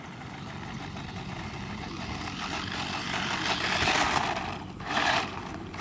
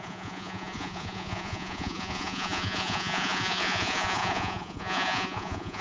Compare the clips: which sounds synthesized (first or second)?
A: second